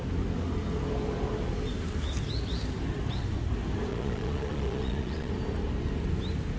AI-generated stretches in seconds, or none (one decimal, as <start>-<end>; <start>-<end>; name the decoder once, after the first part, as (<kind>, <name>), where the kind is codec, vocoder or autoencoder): 3.9-5.3 (vocoder, Vocos)